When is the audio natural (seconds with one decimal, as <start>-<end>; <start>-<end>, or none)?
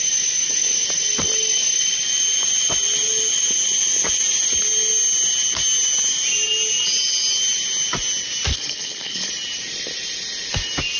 0.0-8.5; 9.3-11.0